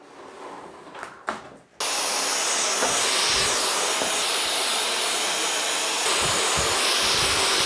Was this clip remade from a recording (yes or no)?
no